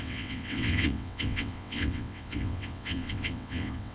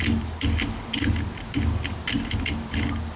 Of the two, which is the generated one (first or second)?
first